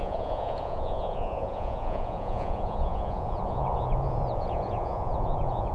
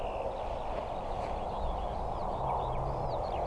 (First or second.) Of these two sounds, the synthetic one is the first